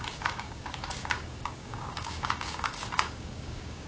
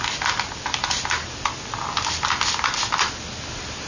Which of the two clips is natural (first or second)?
second